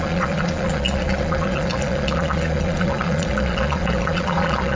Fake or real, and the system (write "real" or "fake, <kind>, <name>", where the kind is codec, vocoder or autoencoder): fake, vocoder, Vocos